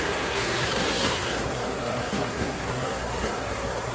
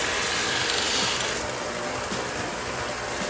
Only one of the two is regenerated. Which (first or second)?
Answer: first